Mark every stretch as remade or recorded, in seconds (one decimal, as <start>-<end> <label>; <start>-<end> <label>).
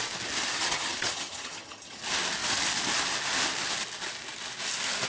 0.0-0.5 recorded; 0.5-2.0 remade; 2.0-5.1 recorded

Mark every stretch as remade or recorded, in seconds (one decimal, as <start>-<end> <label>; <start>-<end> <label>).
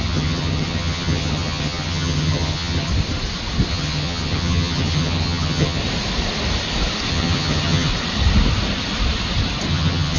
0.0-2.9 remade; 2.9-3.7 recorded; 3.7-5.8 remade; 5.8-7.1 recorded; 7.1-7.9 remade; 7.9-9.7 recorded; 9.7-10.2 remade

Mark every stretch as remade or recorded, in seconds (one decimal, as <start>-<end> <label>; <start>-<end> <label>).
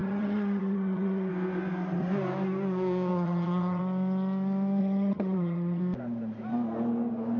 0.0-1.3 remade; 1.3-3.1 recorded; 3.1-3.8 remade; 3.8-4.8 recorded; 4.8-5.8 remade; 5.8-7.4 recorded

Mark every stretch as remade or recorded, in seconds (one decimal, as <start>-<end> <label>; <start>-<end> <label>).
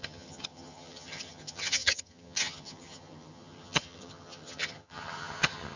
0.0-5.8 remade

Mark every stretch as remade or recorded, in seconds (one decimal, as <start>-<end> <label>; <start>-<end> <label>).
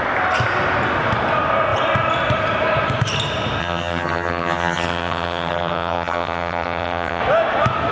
0.0-3.6 recorded; 3.6-7.2 remade; 7.2-7.9 recorded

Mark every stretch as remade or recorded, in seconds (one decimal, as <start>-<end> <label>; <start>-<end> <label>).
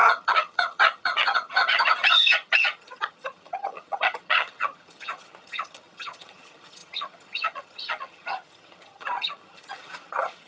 0.0-10.5 remade